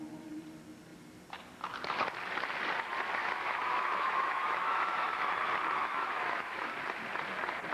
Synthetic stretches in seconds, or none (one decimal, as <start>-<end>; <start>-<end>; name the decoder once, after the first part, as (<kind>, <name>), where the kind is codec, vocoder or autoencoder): 3.2-5.3 (autoencoder, DAC-VAE); 5.8-6.7